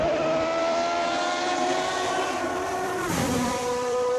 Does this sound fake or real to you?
fake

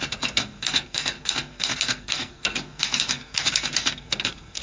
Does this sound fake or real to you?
fake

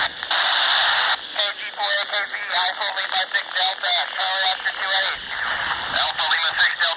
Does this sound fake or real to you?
real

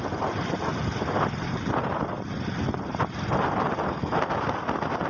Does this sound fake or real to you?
real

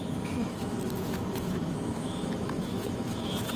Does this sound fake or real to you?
fake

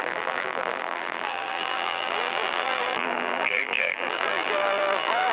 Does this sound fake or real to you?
fake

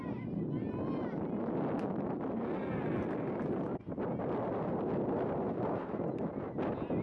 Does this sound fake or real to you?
real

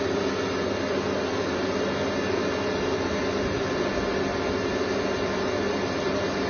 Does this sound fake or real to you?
real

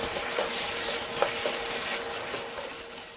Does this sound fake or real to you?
real